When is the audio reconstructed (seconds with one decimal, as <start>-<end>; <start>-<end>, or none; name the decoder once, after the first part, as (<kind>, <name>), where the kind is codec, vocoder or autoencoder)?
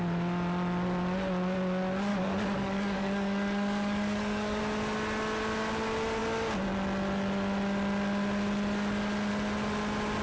2.1-4.6 (codec, DAC)